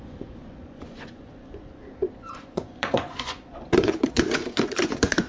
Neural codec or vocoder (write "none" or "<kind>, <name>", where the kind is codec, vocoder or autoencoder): vocoder, Vocos